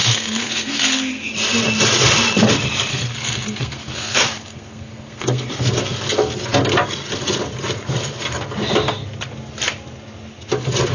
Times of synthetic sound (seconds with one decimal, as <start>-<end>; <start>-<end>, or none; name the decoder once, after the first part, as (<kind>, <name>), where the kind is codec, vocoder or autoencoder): 0.0-1.3 (codec, SNAC); 2.9-5.7